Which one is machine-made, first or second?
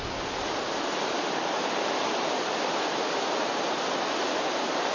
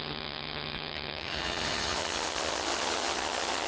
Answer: second